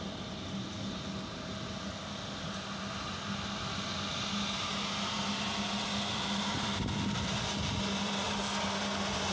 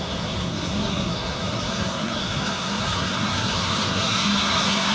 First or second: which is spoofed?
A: second